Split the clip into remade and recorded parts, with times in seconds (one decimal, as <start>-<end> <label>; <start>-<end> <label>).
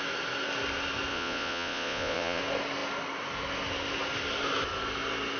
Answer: 0.0-1.1 recorded; 1.1-2.4 remade; 2.4-5.4 recorded